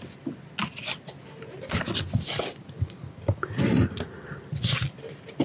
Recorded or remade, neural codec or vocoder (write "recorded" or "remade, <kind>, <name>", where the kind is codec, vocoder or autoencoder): recorded